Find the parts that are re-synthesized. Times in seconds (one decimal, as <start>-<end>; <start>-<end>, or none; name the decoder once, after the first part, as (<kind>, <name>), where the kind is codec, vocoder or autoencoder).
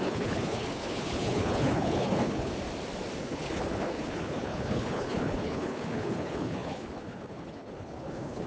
0.0-2.5 (codec, HILCodec); 3.2-8.5